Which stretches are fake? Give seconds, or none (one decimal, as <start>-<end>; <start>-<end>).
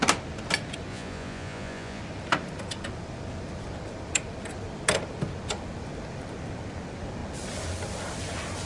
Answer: 0.9-2.0